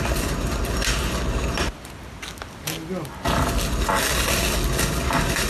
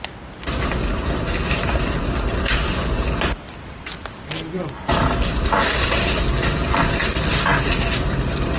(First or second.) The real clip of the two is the first